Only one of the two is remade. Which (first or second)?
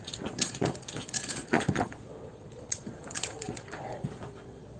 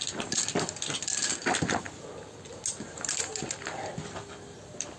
first